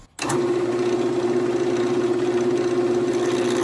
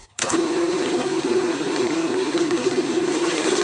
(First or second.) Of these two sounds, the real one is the first